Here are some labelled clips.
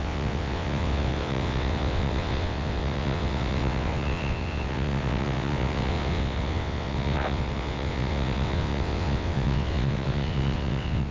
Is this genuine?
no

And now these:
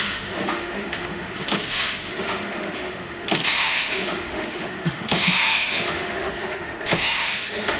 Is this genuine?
no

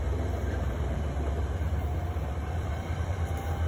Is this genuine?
no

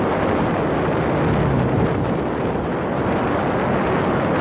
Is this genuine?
yes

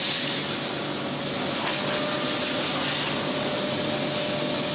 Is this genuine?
yes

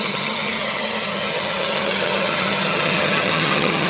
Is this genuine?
no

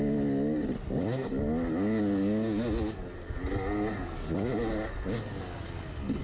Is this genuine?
yes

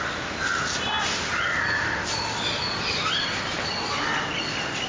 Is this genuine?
yes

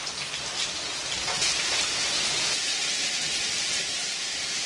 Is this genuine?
yes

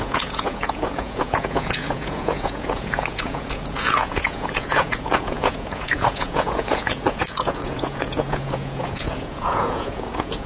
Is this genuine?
no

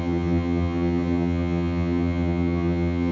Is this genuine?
no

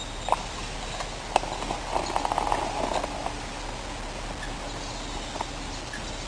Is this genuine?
yes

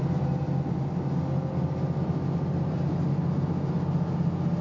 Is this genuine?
yes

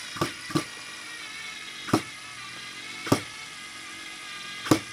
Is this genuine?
yes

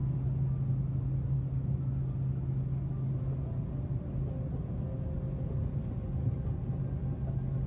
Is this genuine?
yes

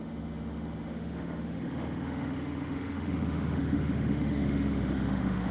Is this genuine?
no